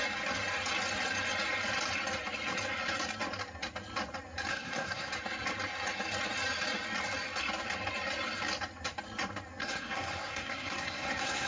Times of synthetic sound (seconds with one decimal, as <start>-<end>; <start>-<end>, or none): 4.5-5.1; 9.6-11.5